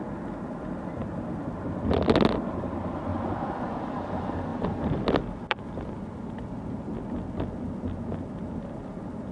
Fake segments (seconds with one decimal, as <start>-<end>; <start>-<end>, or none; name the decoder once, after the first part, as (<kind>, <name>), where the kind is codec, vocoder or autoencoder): 3.1-3.8 (vocoder, Vocos)